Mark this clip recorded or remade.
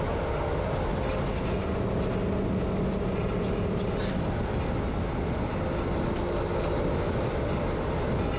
recorded